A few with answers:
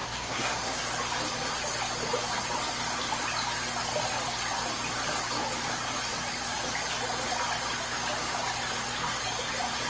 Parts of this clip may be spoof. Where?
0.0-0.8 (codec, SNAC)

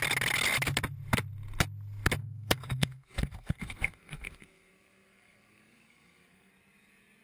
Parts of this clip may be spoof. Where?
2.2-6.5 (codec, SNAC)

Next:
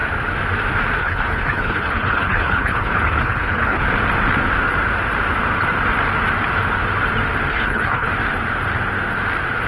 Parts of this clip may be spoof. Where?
1.0-3.8 (codec, HILCodec); 7.5-8.1